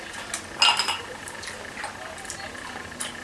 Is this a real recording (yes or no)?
yes